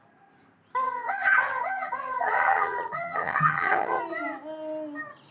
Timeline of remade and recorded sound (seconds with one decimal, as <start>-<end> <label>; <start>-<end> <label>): 0.0-0.8 recorded; 0.8-4.0 remade; 4.0-5.3 recorded